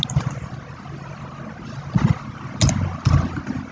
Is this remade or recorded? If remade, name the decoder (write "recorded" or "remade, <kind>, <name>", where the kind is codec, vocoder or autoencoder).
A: recorded